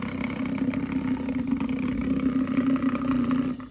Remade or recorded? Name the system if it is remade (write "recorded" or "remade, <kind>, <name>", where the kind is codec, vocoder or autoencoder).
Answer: recorded